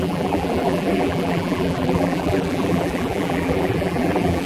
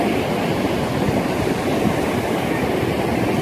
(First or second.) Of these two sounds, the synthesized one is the first